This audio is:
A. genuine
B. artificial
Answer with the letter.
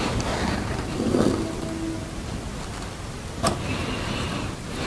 A